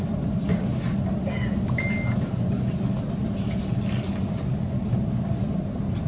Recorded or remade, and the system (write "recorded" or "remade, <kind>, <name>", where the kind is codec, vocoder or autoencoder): recorded